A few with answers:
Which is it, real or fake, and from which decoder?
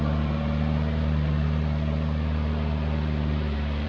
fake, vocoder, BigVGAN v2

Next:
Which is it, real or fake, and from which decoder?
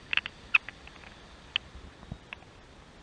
real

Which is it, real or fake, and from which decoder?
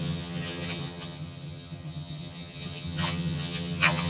fake, vocoder, HiFi-GAN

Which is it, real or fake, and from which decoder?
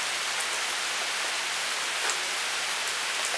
real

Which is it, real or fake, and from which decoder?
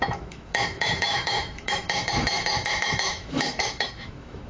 fake, autoencoder, DAC-VAE